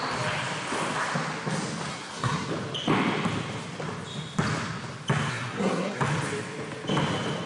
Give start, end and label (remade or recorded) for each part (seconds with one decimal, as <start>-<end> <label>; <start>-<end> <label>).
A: 0.0-1.9 recorded; 1.9-2.5 remade; 2.5-5.3 recorded; 5.3-6.0 remade; 6.0-7.5 recorded